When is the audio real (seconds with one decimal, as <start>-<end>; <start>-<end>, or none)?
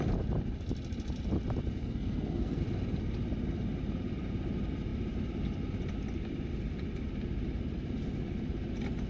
0.0-1.8; 2.6-9.1